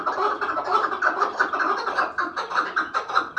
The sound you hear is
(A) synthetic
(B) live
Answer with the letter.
B